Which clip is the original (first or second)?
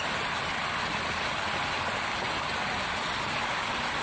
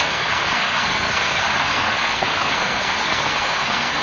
first